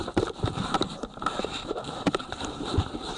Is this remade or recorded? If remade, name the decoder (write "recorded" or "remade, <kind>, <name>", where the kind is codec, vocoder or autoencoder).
remade, vocoder, BigVGAN v2